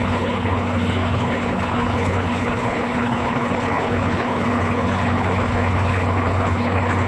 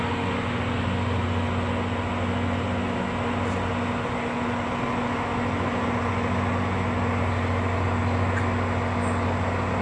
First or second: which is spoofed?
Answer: first